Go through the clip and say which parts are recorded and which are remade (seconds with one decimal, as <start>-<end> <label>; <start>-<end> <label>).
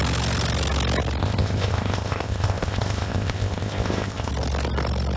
0.0-1.2 recorded; 1.2-4.3 remade; 4.3-5.2 recorded